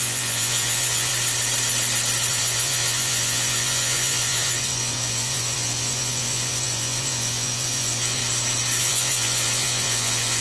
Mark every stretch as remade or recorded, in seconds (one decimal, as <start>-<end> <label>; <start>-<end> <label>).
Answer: 0.0-1.1 remade; 1.1-2.3 recorded; 2.3-8.2 remade; 8.2-8.8 recorded; 8.8-10.4 remade